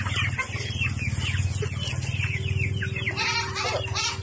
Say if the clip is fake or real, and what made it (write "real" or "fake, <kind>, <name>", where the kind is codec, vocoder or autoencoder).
real